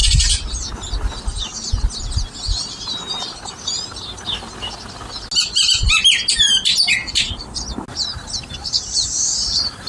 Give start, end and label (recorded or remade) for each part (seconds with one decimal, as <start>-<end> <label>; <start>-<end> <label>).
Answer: 0.0-9.9 recorded